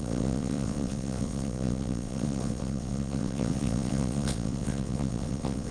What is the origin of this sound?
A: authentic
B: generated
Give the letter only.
B